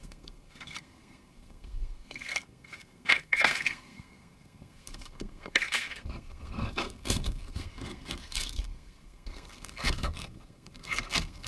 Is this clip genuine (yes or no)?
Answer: no